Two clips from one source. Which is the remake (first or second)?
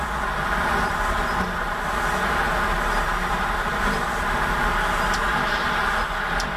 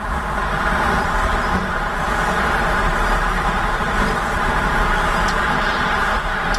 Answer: second